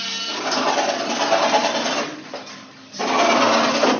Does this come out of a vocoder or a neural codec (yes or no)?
no